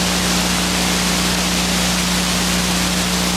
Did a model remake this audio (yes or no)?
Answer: no